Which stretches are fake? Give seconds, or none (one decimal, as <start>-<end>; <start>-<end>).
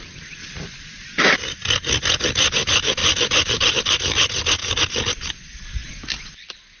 0.4-1.3; 3.0-3.7; 4.6-5.6